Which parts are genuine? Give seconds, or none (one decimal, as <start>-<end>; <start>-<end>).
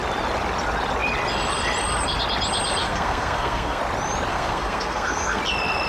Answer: 0.0-2.8; 3.8-4.3; 5.4-5.9